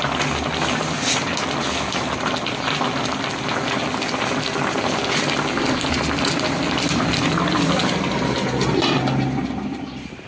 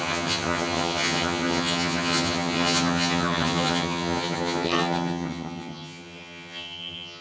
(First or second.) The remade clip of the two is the second